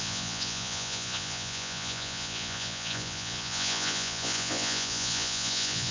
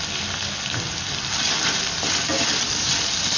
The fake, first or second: first